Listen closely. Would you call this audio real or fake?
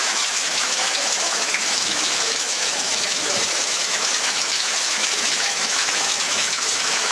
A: fake